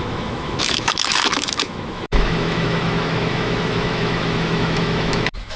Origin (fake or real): fake